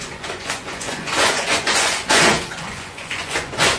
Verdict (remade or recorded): remade